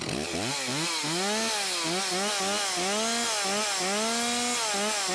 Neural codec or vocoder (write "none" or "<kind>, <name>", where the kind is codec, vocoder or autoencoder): none